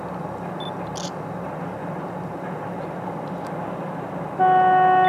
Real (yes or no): yes